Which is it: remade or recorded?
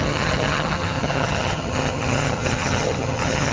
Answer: remade